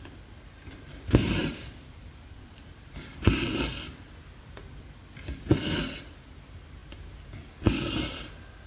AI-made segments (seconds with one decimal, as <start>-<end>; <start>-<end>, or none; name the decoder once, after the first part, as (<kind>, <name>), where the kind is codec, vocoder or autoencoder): 1.4-5.0 (vocoder, BigVGAN v2); 6.8-7.5